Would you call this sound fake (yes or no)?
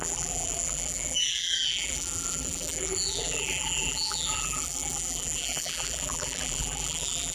yes